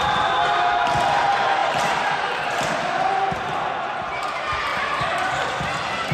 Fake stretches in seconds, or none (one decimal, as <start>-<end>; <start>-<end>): 1.6-3.6; 4.7-5.6